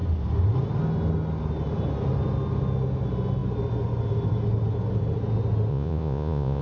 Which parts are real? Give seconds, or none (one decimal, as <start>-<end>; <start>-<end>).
0.0-5.7